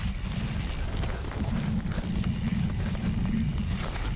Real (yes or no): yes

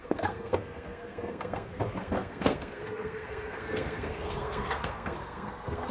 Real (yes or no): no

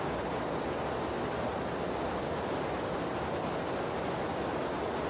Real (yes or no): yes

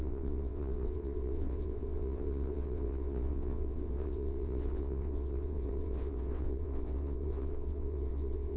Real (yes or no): no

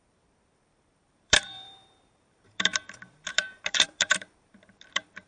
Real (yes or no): no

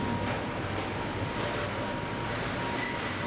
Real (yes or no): yes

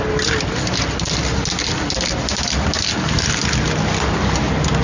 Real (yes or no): yes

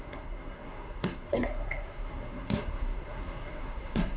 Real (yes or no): no